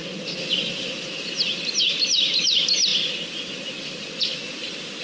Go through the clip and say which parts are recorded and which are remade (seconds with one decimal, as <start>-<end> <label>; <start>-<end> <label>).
0.0-5.0 recorded